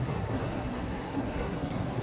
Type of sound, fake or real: fake